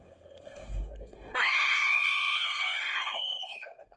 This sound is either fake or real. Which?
fake